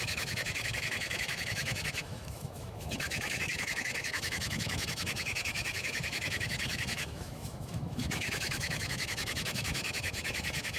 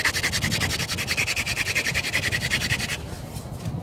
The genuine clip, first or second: second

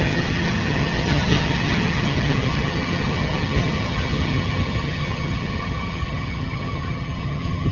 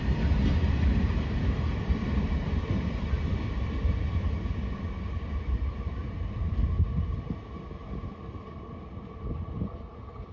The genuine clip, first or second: second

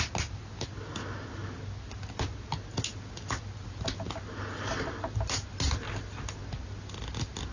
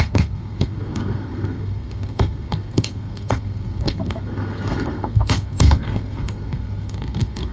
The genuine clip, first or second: first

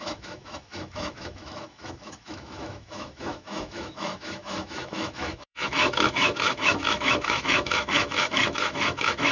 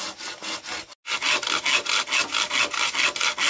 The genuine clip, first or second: second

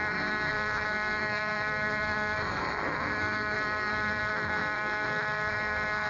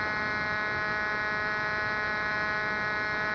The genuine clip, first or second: second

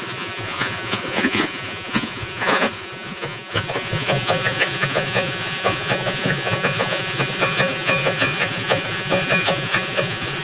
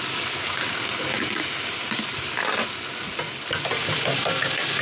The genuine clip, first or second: second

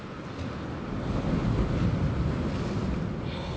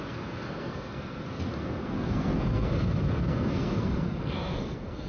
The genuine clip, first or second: first